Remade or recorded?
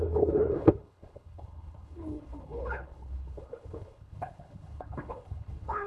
remade